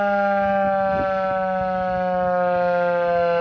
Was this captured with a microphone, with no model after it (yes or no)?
yes